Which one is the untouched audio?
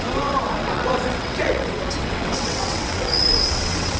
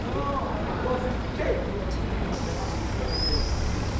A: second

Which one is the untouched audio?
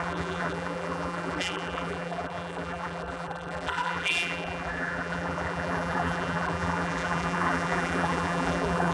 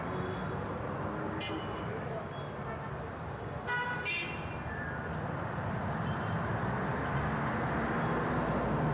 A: second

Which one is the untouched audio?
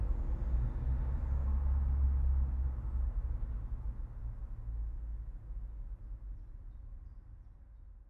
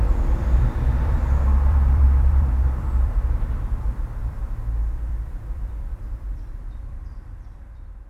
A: first